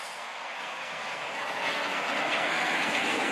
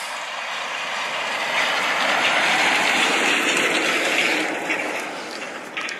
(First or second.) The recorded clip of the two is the second